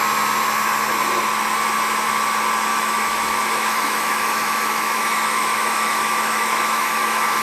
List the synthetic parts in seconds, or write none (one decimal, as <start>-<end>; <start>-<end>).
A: 2.7-7.4